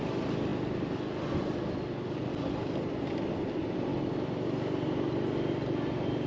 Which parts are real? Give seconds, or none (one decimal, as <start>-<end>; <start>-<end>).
0.0-6.3